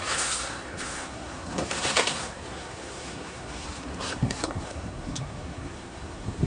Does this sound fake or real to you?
fake